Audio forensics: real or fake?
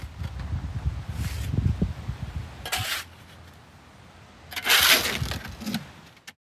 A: real